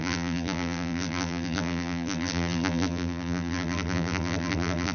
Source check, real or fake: fake